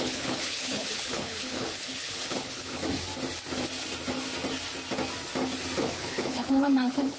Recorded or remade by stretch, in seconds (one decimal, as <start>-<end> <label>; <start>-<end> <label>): 0.0-2.8 remade; 2.8-5.8 recorded; 5.8-7.2 remade